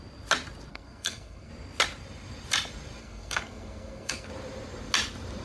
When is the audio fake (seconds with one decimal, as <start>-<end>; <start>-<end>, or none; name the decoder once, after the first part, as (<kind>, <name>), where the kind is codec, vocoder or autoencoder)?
0.7-1.5 (codec, SNAC); 3.0-4.3